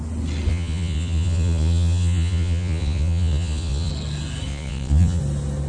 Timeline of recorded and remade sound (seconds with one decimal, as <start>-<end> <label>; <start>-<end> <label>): 0.0-0.5 recorded; 0.5-3.9 remade; 3.9-4.5 recorded; 4.5-5.2 remade; 5.2-5.7 recorded